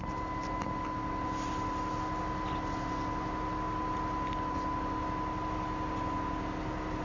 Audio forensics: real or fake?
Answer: real